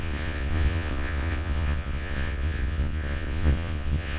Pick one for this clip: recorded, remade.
remade